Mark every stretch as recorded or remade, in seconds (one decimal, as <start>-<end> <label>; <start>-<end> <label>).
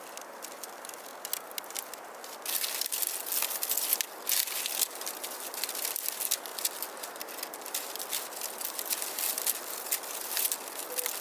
0.0-11.2 recorded